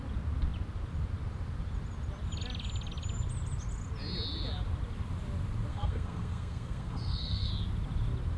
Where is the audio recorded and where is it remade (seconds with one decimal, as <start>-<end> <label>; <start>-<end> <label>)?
0.0-5.7 recorded; 5.7-7.5 remade; 7.5-8.4 recorded